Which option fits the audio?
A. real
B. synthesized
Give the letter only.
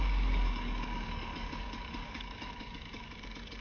B